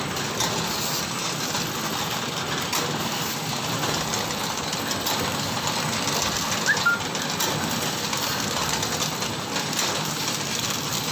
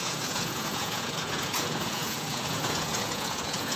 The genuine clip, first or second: first